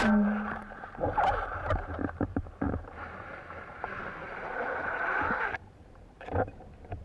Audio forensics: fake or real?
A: fake